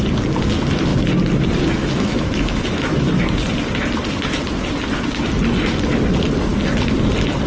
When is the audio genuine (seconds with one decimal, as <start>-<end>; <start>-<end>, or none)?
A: 0.0-1.8; 3.3-7.5